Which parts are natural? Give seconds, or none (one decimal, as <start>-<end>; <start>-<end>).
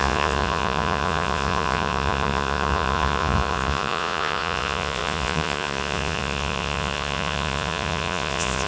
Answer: none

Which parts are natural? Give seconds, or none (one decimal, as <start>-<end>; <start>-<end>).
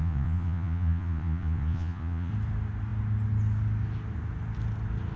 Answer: 2.3-5.2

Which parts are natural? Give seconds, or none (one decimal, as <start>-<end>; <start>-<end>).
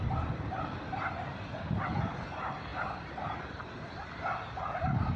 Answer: 0.0-5.2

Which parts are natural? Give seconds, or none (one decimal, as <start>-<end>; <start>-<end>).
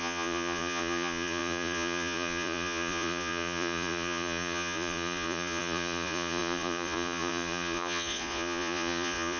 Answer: none